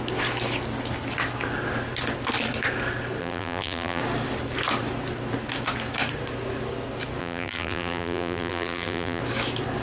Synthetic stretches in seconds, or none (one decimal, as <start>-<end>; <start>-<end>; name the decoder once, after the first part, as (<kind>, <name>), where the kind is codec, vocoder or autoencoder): 3.2-4.0 (vocoder, BigVGAN v2); 7.2-9.2